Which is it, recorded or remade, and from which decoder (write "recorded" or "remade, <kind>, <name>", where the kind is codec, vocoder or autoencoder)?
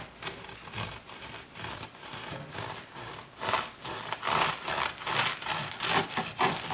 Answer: recorded